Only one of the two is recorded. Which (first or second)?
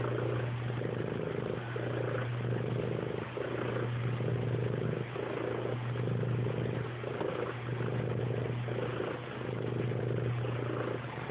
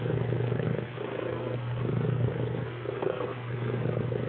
first